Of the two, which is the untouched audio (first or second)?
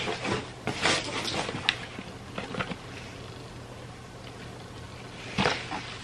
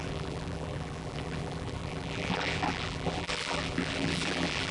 first